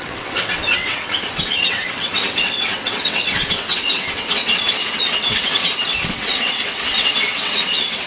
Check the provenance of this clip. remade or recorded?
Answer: remade